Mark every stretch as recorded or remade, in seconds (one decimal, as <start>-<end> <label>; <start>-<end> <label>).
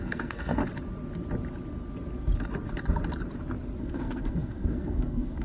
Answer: 0.0-0.6 remade; 0.6-3.8 recorded; 3.8-5.4 remade